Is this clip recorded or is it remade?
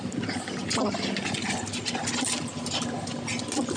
recorded